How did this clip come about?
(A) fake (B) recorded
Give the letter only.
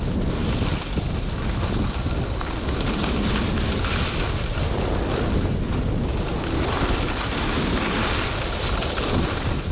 B